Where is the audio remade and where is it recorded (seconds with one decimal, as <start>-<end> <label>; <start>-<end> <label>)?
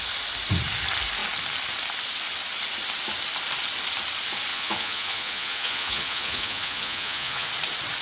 0.0-4.5 recorded; 4.5-7.5 remade; 7.5-8.0 recorded